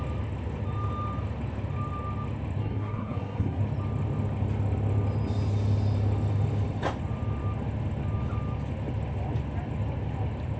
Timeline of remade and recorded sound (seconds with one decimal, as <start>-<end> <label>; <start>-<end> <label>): 0.0-2.6 recorded; 2.6-3.6 remade; 3.6-10.6 recorded